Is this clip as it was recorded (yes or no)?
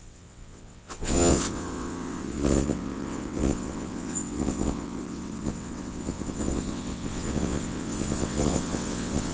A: no